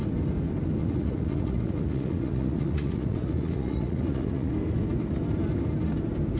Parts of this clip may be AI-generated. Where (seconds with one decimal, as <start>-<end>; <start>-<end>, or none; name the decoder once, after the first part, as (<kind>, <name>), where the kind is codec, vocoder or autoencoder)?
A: 0.8-4.5 (vocoder, Vocos)